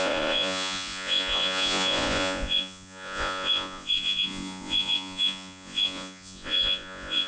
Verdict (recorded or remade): remade